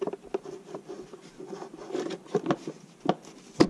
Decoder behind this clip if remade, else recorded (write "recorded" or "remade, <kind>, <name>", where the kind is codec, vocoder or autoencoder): recorded